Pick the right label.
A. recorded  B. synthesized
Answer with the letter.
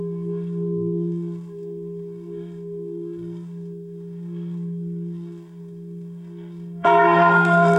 B